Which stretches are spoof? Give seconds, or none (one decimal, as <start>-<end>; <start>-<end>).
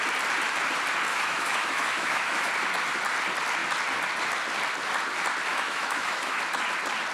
1.1-2.5; 5.5-6.4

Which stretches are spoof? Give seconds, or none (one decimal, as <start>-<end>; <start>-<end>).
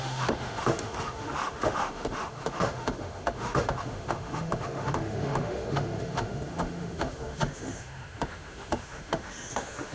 0.0-9.9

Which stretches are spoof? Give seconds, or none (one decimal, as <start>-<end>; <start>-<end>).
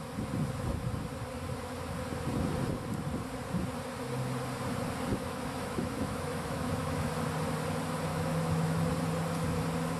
5.1-7.0; 8.1-8.9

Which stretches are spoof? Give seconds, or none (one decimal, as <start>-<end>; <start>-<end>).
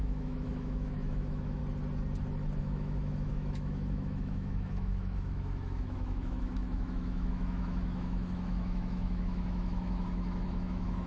0.0-1.6; 2.6-11.1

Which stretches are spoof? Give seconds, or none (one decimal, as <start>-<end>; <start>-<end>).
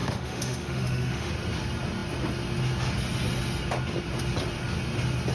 0.0-1.3